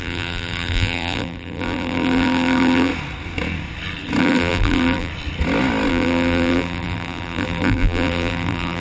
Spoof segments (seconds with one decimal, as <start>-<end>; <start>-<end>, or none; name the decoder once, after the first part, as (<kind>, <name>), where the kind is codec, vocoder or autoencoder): 0.0-2.9 (vocoder, BigVGAN v2); 4.2-5.1; 5.9-8.8